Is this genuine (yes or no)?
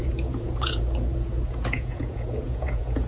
no